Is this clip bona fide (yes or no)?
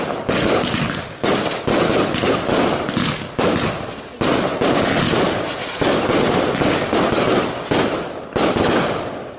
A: yes